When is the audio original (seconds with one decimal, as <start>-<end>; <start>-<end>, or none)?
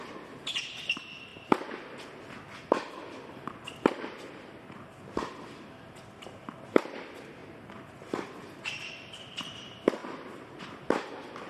1.3-3.9; 7.4-8.8; 10.0-10.6